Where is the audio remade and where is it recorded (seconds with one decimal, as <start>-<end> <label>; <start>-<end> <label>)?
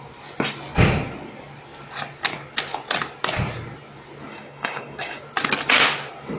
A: 0.0-4.3 recorded; 4.3-5.2 remade; 5.2-6.4 recorded